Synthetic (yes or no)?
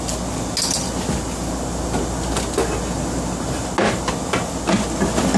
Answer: no